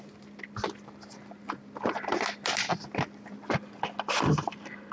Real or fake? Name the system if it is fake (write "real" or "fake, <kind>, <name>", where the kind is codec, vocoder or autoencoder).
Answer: real